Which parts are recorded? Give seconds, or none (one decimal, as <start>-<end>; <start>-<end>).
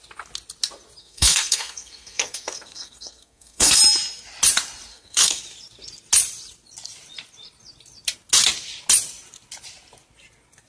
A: 0.0-1.0; 3.8-4.9; 5.4-10.7